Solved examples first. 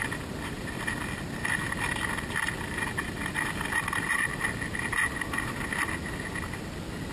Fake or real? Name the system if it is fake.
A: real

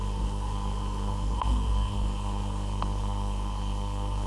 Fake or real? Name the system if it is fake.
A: fake, codec, SNAC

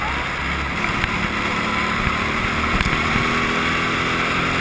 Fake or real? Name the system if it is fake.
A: real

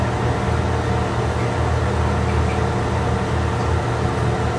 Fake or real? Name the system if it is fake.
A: real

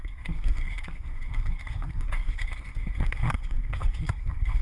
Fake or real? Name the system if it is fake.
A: fake, codec, SNAC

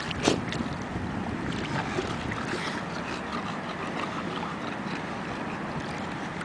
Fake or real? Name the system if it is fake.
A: real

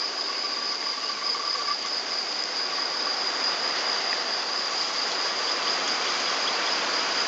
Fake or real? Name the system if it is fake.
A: real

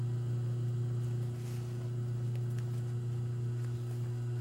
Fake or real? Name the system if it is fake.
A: real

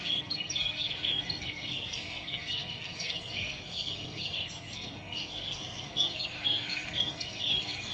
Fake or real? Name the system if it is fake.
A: fake, codec, SNAC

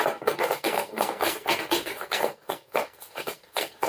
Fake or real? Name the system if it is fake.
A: fake, codec, SNAC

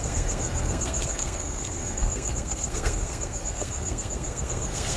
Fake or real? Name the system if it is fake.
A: fake, codec, SNAC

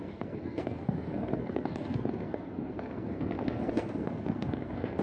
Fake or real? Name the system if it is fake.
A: fake, codec, SNAC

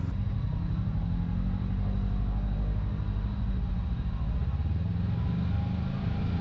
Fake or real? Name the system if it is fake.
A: real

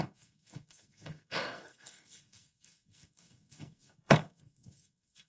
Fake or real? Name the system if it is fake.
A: fake, codec, SNAC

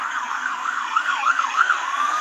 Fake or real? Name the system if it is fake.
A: fake, codec, SNAC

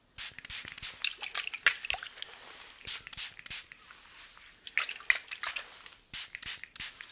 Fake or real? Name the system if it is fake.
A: real